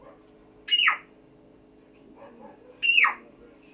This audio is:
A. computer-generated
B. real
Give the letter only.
B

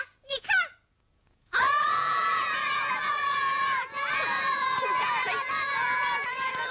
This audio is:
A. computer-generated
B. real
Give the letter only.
A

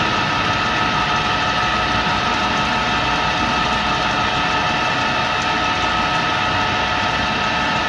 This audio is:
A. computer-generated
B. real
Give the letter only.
B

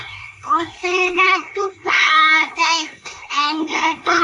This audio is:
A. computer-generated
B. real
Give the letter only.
A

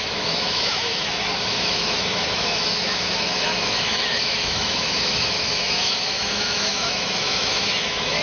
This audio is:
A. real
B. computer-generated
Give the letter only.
B